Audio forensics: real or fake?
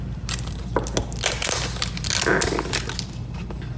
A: real